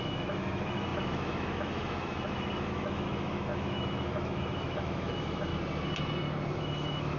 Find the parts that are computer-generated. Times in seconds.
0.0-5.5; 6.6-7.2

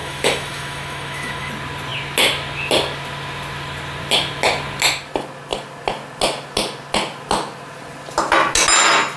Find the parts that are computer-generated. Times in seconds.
0.0-1.5